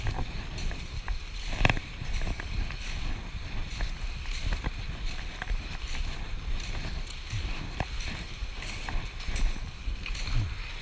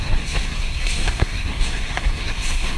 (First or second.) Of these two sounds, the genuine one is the first